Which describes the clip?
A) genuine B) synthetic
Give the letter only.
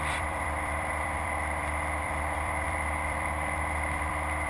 B